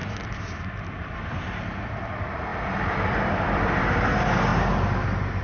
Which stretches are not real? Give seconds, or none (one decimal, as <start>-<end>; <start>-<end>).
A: 0.0-2.1; 2.5-4.0